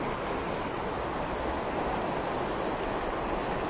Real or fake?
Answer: real